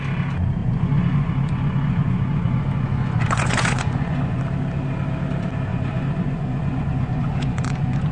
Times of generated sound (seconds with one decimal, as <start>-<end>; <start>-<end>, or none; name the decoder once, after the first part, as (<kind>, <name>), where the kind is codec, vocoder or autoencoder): 0.6-4.4 (vocoder, Vocos); 5.7-8.1

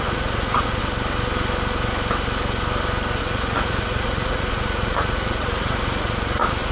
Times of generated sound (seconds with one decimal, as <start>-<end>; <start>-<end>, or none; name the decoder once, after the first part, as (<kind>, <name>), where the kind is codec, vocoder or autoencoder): 0.0-0.8 (vocoder, Vocos); 3.2-6.7